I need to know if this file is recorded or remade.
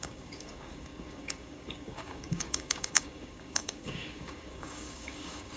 remade